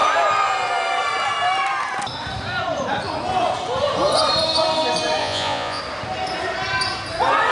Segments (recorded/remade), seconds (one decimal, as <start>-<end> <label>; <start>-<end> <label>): 0.0-5.2 recorded; 5.2-5.8 remade; 5.8-7.5 recorded